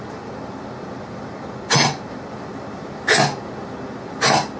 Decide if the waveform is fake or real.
real